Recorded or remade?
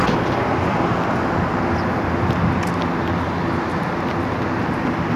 recorded